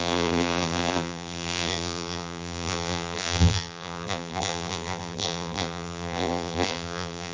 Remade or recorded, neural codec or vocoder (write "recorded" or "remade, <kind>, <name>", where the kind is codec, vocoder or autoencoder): remade, vocoder, BigVGAN v2